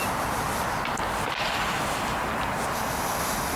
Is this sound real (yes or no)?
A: yes